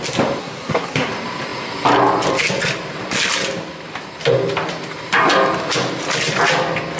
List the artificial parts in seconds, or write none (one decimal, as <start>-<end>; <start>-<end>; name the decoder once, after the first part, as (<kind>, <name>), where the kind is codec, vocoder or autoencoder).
0.4-1.1 (codec, SNAC)